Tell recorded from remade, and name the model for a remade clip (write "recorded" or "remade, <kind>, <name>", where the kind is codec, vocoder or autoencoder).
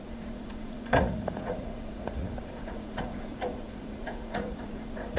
remade, vocoder, Vocos